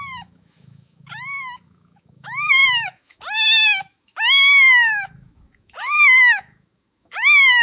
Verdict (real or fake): fake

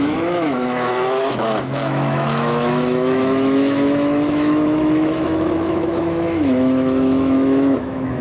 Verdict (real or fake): fake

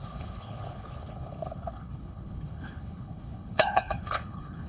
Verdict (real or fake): fake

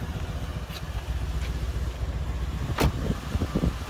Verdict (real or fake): real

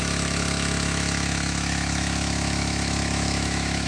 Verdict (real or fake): fake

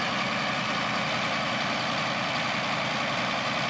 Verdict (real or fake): real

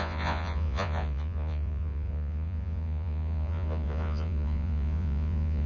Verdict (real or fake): fake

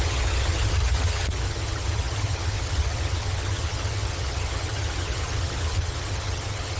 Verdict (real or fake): fake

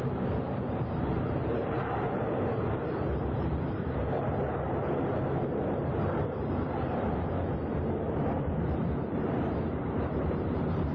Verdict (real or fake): fake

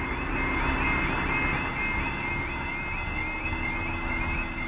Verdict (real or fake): real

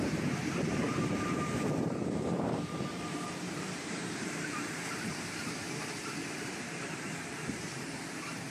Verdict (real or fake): fake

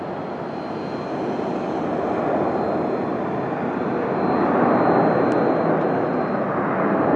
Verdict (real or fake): real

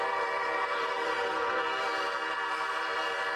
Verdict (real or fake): fake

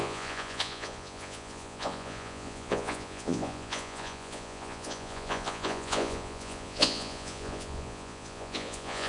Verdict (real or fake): fake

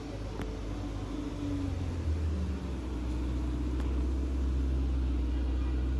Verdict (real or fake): real